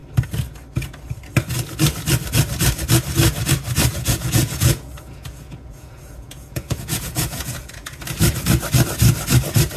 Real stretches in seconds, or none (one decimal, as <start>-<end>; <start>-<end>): 0.0-3.9; 8.0-9.8